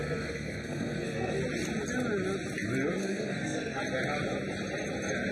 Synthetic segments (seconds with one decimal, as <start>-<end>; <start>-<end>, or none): 0.0-1.4; 3.0-3.8